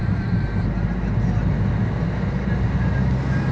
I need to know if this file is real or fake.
real